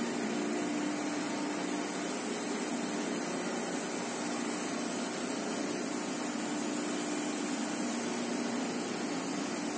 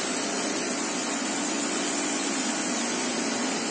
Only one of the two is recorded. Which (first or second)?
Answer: first